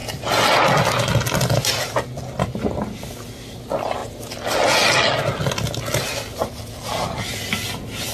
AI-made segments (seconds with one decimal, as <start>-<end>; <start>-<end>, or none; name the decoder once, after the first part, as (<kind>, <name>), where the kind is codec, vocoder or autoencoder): none